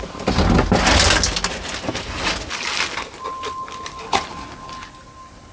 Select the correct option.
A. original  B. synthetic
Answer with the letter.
A